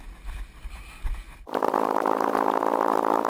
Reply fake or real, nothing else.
real